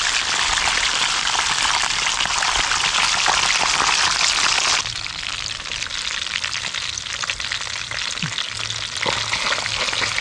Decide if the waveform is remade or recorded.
recorded